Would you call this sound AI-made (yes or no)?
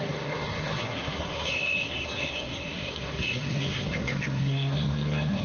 yes